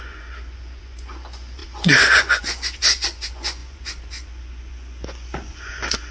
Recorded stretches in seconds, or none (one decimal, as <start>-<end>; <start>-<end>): none

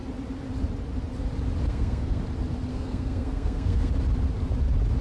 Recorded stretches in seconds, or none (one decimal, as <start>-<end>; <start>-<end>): 0.0-1.7; 2.2-2.7; 3.9-5.0

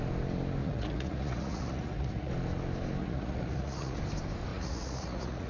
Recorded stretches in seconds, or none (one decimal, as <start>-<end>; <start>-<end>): 0.0-0.6; 2.3-3.0; 4.0-4.5

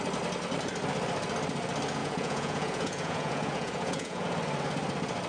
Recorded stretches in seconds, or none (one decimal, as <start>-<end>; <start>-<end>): 0.0-2.0; 4.3-5.3